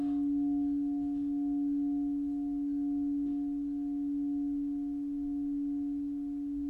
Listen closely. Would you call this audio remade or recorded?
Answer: recorded